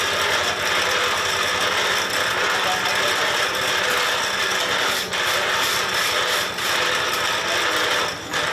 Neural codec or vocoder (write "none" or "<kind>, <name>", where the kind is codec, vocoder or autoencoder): none